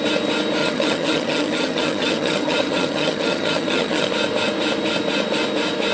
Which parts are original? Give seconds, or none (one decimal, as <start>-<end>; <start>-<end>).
0.0-0.6; 4.1-5.9